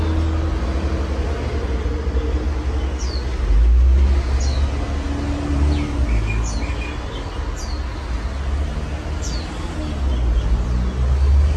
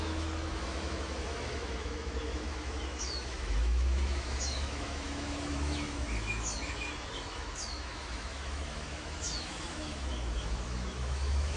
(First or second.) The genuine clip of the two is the first